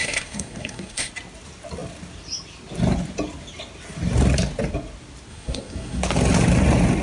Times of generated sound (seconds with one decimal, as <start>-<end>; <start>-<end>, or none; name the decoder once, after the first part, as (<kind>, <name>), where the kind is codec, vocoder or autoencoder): 0.0-1.1 (codec, SNAC); 5.3-6.0